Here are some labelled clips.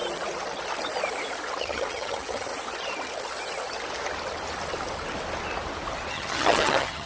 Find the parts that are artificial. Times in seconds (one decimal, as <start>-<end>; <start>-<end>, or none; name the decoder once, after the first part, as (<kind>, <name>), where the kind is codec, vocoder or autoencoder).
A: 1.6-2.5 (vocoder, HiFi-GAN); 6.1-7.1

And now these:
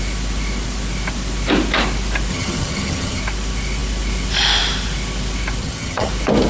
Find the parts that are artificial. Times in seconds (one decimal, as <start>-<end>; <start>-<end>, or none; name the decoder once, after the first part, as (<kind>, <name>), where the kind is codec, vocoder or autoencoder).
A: 2.3-3.2 (vocoder, HiFi-GAN); 5.6-6.1

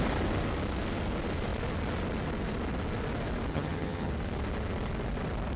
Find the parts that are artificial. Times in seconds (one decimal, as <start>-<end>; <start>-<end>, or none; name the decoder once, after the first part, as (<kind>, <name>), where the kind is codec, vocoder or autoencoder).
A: 3.5-4.1 (vocoder, HiFi-GAN)

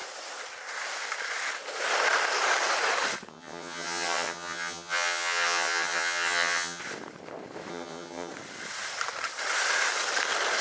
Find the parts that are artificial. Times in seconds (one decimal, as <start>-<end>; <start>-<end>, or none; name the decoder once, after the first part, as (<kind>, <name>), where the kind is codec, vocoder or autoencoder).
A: 3.3-6.8 (vocoder, HiFi-GAN); 7.7-8.3

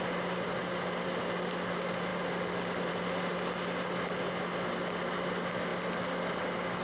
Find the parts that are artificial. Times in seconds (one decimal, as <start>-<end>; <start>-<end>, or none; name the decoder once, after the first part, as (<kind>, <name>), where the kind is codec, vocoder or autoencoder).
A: none